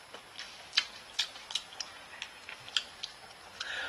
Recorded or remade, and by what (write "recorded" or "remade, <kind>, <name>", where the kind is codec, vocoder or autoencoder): recorded